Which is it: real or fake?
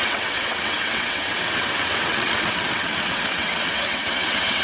fake